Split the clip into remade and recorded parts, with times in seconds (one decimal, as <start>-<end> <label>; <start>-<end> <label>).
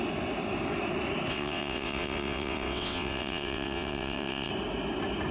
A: 0.0-1.3 recorded; 1.3-4.5 remade; 4.5-5.3 recorded